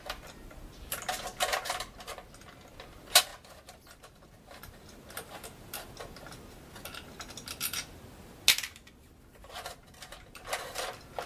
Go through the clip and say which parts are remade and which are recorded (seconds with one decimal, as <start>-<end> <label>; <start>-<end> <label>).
0.0-11.3 recorded